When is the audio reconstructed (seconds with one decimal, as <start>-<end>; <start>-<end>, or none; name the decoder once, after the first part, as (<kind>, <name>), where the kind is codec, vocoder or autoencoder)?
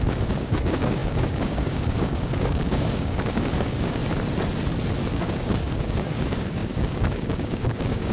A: 0.0-4.0 (codec, DAC); 5.1-8.1